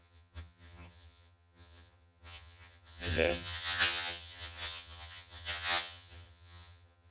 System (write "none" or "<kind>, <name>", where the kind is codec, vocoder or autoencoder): vocoder, HiFi-GAN